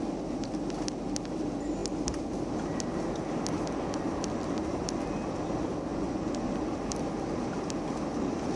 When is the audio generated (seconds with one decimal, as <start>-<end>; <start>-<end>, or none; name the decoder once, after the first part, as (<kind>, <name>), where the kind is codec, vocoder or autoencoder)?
5.9-6.5 (vocoder, Vocos)